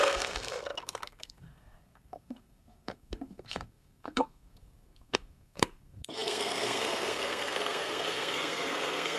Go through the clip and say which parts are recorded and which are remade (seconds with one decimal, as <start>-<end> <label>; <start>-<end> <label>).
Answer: 0.0-9.2 remade